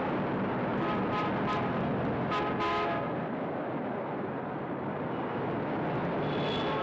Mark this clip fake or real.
real